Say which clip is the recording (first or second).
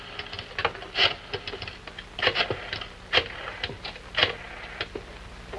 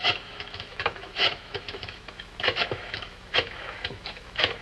first